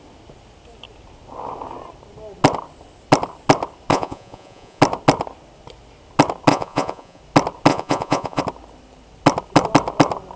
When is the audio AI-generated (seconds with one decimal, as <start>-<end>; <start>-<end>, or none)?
3.9-4.8; 6.5-7.2; 7.7-8.4